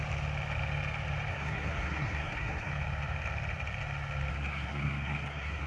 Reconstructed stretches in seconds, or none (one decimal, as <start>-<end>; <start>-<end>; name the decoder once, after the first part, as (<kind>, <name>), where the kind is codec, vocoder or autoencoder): 1.3-2.7 (codec, SNAC); 4.3-5.7

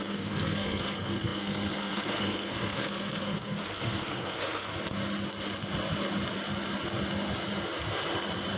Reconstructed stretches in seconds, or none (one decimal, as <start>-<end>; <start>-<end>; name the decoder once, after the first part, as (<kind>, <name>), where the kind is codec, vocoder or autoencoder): 0.0-4.7 (codec, SNAC)